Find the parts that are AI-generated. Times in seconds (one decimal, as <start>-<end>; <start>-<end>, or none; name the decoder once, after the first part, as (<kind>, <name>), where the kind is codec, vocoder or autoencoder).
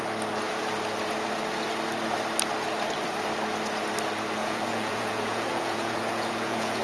4.4-6.8 (vocoder, Vocos)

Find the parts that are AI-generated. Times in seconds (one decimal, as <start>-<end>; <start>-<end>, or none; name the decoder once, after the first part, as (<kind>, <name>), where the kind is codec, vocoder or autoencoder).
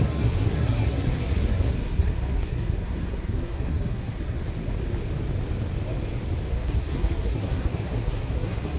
0.0-4.4 (codec, SNAC); 6.5-8.8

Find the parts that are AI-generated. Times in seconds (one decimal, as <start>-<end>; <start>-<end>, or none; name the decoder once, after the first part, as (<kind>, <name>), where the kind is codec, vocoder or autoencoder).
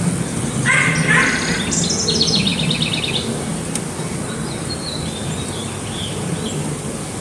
none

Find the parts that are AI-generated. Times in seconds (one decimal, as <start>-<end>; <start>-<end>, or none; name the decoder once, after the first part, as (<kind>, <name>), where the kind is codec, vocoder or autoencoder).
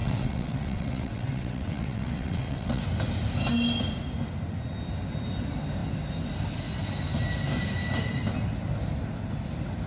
0.0-2.8 (vocoder, WaveNeXt)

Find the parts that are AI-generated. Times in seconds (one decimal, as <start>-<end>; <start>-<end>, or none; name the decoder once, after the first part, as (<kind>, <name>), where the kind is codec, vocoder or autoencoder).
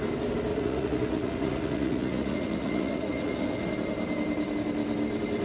0.5-3.7 (vocoder, Vocos)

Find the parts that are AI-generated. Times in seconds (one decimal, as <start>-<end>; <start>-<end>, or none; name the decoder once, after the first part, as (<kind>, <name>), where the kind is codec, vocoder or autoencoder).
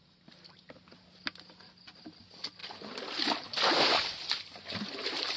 none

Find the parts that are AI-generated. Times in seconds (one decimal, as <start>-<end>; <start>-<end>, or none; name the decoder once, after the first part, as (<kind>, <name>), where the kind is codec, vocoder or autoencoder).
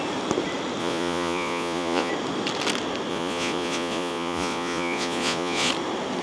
0.8-2.1 (vocoder, Vocos); 3.1-5.7